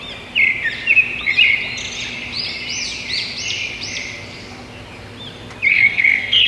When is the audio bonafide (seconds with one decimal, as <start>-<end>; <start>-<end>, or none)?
0.0-5.7